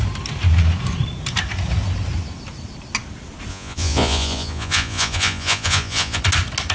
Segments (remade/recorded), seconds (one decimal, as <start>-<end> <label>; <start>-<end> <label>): 0.0-3.5 recorded; 3.5-6.2 remade; 6.2-6.7 recorded